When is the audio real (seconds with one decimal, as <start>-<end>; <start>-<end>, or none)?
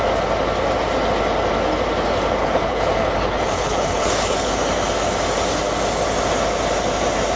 0.0-2.4; 4.5-7.4